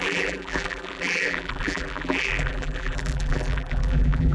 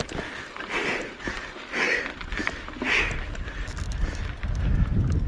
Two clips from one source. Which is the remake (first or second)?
first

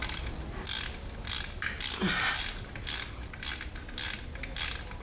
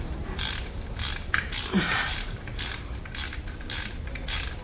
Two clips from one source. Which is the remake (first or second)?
second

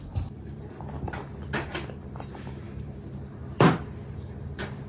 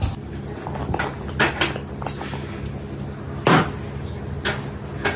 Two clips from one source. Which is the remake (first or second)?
first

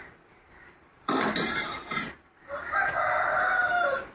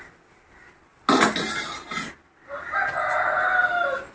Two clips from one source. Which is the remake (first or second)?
first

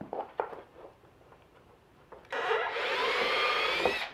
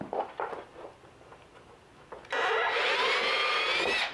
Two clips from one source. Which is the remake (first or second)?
first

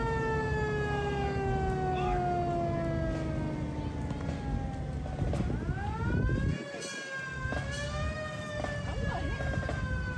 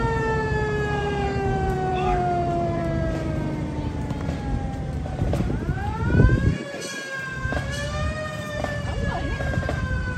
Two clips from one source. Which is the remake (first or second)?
second